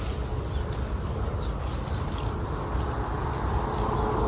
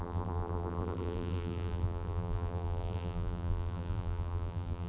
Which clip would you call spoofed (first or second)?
second